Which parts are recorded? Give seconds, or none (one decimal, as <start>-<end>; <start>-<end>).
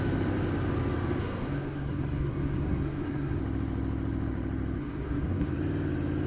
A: 0.0-1.2; 3.4-4.8; 5.5-6.3